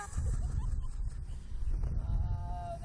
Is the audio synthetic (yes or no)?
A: no